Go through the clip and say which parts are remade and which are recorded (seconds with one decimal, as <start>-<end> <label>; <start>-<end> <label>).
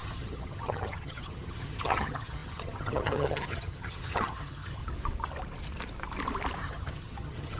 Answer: 0.0-4.8 remade; 4.8-6.6 recorded; 6.6-7.6 remade